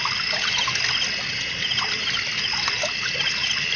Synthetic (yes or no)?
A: no